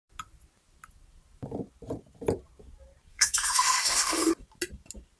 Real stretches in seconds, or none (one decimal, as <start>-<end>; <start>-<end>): 0.0-3.1; 4.3-5.2